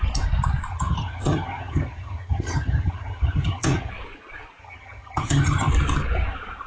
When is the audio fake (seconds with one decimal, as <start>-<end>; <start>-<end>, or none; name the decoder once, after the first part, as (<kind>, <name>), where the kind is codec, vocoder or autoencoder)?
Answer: 0.7-3.9 (vocoder, HiFi-GAN); 4.6-5.7